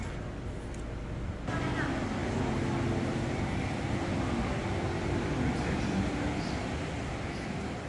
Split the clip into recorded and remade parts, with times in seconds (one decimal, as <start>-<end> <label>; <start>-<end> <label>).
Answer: 0.0-7.9 recorded